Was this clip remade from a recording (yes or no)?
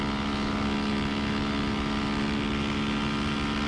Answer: no